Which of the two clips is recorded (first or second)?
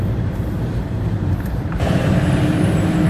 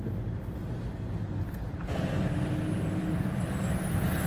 second